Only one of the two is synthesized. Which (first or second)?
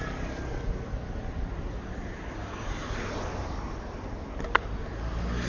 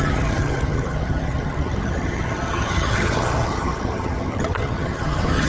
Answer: second